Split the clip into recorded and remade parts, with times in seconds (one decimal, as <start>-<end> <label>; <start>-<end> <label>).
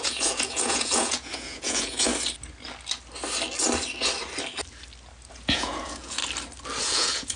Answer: 0.0-2.1 remade; 2.1-5.3 recorded; 5.3-6.2 remade; 6.2-6.8 recorded; 6.8-7.4 remade